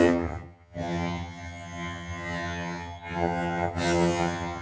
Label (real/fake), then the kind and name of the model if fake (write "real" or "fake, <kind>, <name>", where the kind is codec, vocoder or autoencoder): fake, vocoder, HiFi-GAN